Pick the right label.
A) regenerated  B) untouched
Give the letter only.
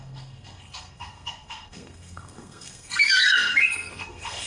A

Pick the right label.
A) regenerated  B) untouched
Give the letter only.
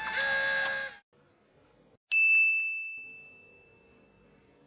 B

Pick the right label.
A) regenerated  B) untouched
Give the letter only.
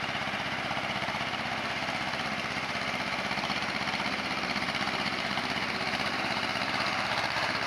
A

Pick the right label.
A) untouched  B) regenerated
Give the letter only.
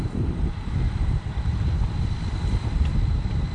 B